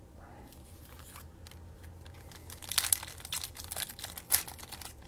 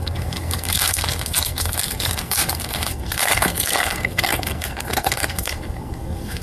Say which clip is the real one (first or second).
first